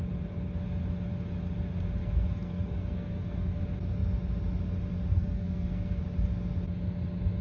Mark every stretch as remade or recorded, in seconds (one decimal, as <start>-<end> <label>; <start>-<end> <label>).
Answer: 0.0-2.0 recorded; 2.0-3.6 remade; 3.6-5.1 recorded; 5.1-6.0 remade; 6.0-7.4 recorded

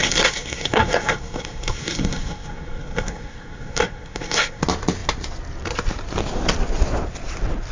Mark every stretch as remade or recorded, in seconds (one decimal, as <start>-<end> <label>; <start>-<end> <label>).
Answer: 0.0-4.6 remade; 4.6-7.7 recorded

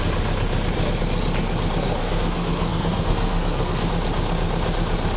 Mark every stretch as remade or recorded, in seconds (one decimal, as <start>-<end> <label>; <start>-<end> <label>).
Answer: 0.0-2.0 recorded; 2.0-3.9 remade; 3.9-5.2 recorded

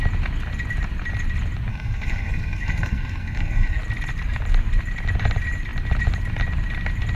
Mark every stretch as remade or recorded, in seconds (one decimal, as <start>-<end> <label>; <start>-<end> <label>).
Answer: 0.0-1.7 recorded; 1.7-3.8 remade; 3.8-7.2 recorded

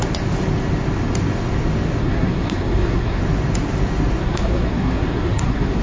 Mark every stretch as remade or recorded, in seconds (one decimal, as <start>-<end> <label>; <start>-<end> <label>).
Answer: 0.0-2.0 recorded; 2.0-3.2 remade; 3.2-4.2 recorded; 4.2-5.8 remade